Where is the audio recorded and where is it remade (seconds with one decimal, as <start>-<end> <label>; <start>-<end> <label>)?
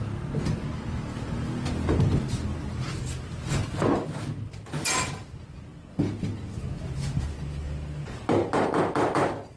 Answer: 0.0-9.6 recorded